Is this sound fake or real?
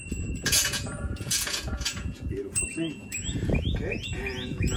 fake